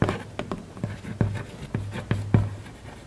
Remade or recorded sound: recorded